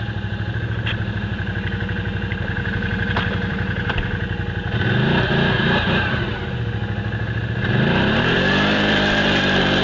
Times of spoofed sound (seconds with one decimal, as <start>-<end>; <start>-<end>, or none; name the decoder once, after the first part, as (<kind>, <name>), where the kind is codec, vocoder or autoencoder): 0.0-6.3 (vocoder, BigVGAN v2); 7.4-9.8